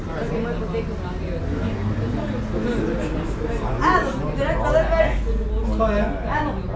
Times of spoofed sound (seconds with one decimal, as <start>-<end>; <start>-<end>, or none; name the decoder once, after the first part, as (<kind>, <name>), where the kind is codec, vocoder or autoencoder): none